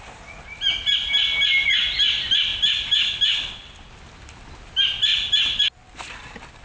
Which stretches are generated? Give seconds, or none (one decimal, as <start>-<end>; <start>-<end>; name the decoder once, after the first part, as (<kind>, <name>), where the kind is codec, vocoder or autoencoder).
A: none